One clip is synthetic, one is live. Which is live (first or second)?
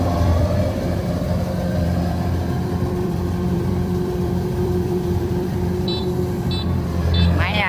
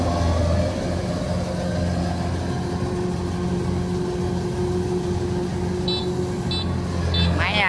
second